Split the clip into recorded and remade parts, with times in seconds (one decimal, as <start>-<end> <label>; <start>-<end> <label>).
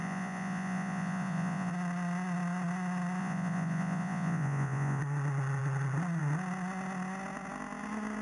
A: 0.0-1.7 remade; 1.7-3.2 recorded; 3.2-5.0 remade; 5.0-8.2 recorded